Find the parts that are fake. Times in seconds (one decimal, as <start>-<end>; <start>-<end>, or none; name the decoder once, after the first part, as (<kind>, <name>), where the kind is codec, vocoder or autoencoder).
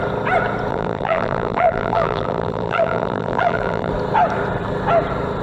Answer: 0.7-3.9 (vocoder, BigVGAN v2)